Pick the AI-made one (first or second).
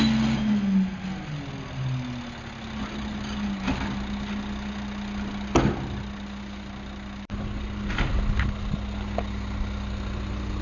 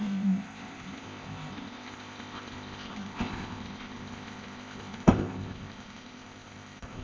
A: second